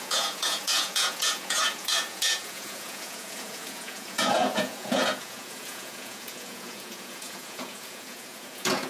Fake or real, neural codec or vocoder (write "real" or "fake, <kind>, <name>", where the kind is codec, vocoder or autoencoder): fake, vocoder, Vocos